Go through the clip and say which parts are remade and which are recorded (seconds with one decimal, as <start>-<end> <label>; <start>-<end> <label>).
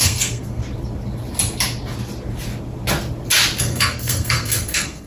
0.0-0.6 remade; 0.6-3.6 recorded; 3.6-5.1 remade